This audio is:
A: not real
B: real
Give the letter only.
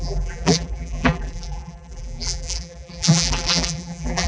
A